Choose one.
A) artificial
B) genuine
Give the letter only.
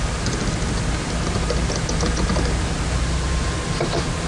B